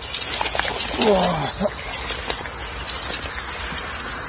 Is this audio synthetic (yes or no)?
no